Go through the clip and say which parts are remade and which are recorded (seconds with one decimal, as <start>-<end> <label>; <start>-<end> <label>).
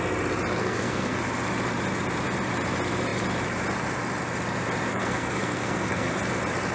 0.0-0.6 recorded; 0.6-1.2 remade; 1.2-4.9 recorded; 4.9-6.2 remade; 6.2-6.7 recorded